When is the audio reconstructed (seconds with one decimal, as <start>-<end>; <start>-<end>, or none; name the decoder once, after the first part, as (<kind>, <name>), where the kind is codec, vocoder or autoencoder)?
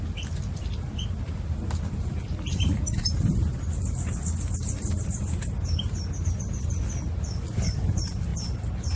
none